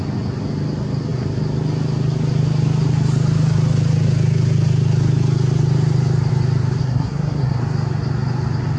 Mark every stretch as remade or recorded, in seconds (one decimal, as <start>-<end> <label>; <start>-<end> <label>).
0.0-6.8 recorded; 6.8-7.6 remade; 7.6-8.8 recorded